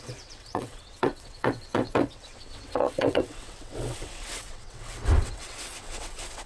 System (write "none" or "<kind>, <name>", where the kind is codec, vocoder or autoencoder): vocoder, WaveNeXt